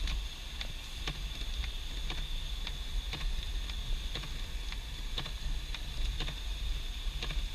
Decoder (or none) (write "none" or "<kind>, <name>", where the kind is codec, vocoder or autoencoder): none